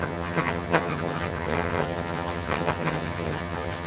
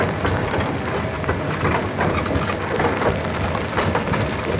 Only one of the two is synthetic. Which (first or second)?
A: first